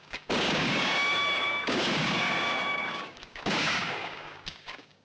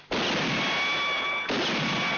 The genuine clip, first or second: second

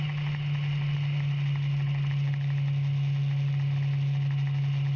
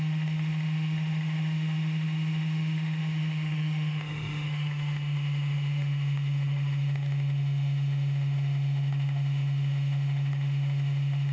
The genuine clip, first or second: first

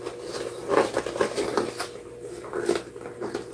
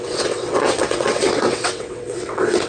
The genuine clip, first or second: first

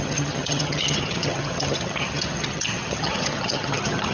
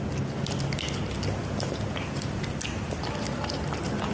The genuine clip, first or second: second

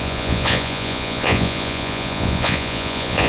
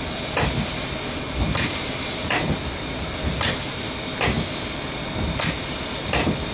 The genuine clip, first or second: second